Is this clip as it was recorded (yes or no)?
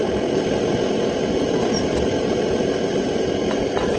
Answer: yes